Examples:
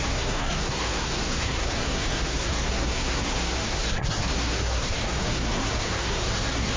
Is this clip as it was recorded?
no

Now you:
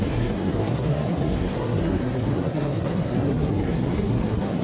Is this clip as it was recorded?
no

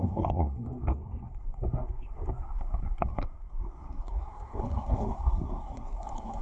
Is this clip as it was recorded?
no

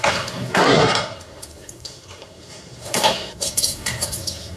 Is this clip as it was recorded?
no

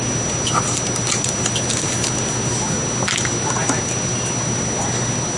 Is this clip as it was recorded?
yes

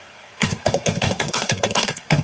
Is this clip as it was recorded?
no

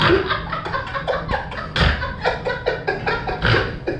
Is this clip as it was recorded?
yes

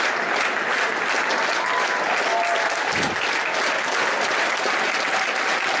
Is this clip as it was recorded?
yes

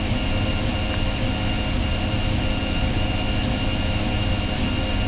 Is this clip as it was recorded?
yes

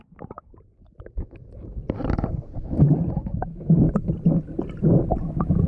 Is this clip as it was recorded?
yes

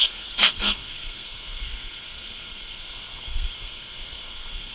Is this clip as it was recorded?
no